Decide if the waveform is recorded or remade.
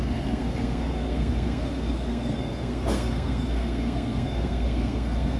remade